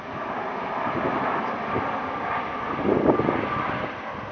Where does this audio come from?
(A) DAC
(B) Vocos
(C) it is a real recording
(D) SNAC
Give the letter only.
C